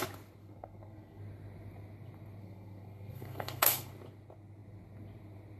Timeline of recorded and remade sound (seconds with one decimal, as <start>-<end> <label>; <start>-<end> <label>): 0.0-0.4 recorded; 0.4-1.2 remade; 1.2-2.4 recorded; 2.4-3.9 remade; 3.9-5.6 recorded